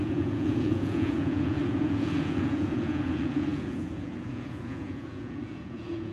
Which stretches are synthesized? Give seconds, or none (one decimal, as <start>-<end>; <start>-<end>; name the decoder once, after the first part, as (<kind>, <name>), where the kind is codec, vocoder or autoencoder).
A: 0.0-6.1 (vocoder, Vocos)

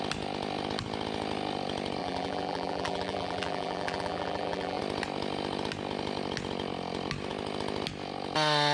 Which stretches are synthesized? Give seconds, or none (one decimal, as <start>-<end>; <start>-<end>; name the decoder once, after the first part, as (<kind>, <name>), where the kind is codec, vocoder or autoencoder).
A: 2.0-4.8 (vocoder, BigVGAN v2)

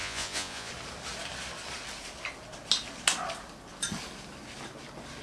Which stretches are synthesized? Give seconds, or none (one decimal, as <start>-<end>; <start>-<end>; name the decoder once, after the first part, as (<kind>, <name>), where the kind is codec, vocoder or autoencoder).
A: 0.0-0.7 (vocoder, Vocos)

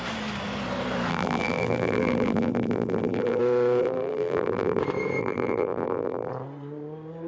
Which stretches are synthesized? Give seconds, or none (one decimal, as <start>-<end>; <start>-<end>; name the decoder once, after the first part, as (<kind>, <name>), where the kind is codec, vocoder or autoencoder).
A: 1.1-3.4 (vocoder, BigVGAN v2); 3.8-4.8; 5.2-6.3

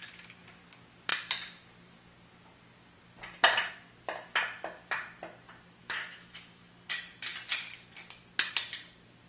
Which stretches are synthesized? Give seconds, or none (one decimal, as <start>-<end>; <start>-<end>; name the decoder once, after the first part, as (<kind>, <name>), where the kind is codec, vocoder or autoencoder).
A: 5.8-6.7 (autoencoder, DAC-VAE)

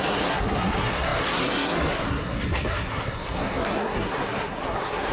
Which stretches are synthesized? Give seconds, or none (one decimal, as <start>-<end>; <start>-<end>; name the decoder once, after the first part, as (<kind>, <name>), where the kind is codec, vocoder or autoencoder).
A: 0.0-5.1 (codec, SNAC)

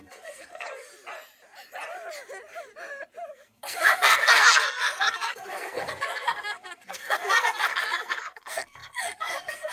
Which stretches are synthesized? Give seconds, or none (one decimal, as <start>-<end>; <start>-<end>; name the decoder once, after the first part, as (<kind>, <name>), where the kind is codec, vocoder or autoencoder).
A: 0.0-0.9 (codec, SNAC); 3.3-9.7

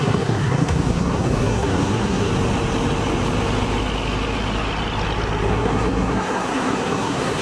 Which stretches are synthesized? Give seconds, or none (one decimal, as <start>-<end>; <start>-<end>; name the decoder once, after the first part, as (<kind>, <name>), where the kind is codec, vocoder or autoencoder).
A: 0.0-2.3 (codec, SNAC); 5.5-7.4